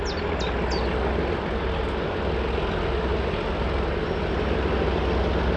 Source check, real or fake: real